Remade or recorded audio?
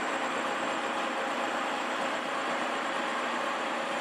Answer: remade